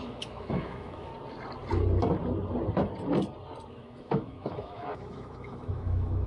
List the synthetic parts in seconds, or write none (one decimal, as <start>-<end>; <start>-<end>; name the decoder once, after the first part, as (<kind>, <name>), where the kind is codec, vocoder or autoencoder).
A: 0.0-1.1 (autoencoder, DAC-VAE); 3.7-6.3